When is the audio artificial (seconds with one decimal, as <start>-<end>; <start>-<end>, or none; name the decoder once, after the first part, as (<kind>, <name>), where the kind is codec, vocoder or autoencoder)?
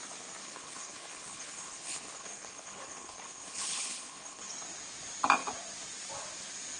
0.4-4.5 (codec, HILCodec)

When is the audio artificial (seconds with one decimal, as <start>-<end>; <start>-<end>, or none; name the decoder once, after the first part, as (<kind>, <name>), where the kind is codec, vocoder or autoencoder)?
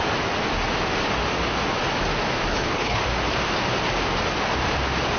2.5-3.0 (codec, HILCodec)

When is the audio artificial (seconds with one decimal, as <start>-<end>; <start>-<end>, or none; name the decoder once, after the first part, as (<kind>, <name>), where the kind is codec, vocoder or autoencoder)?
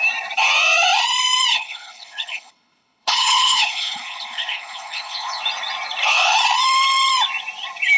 1.5-5.4 (codec, HILCodec)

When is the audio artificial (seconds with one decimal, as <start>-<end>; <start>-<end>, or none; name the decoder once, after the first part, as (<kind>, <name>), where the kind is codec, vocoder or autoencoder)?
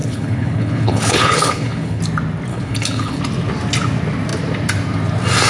0.0-2.0 (codec, HILCodec); 2.5-3.2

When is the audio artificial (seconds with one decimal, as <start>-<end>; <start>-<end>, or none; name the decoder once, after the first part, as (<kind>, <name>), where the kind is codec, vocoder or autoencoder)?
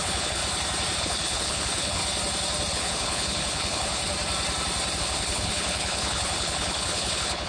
0.0-0.4 (codec, HILCodec); 1.0-2.0; 2.7-4.0; 5.0-7.5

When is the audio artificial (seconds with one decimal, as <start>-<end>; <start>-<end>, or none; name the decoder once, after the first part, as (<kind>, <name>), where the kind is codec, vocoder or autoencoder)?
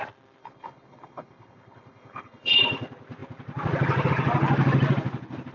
0.4-2.6 (codec, HILCodec)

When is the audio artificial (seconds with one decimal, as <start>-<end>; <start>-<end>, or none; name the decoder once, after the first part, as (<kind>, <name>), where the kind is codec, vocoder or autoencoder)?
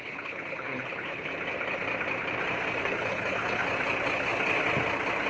0.0-1.3 (codec, HILCodec); 2.8-3.6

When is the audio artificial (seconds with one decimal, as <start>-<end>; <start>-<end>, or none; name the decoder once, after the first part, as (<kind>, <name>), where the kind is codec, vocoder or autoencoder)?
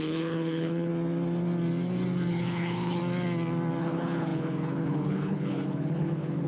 0.0-0.9 (codec, HILCodec); 2.3-3.0; 3.8-6.5